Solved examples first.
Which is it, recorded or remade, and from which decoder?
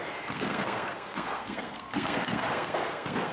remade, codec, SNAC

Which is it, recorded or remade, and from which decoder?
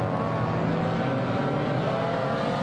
recorded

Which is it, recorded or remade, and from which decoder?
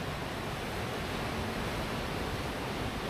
recorded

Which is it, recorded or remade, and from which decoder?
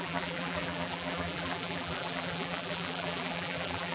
remade, vocoder, BigVGAN v2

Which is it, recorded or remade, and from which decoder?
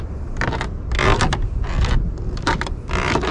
recorded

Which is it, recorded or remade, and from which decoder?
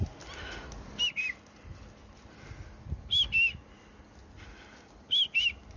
recorded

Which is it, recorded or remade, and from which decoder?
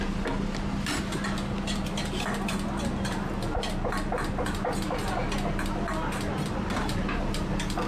recorded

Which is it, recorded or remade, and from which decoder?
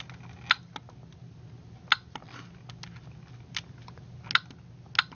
recorded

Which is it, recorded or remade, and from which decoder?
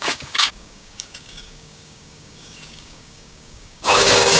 remade, codec, DAC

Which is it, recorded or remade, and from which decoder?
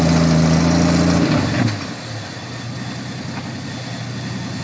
recorded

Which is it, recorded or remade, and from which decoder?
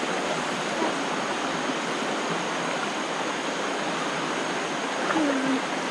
recorded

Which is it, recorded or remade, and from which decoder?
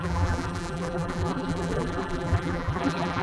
remade, vocoder, BigVGAN v2